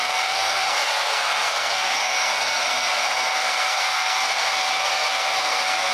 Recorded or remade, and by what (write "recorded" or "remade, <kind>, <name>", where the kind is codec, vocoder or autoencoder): remade, codec, SNAC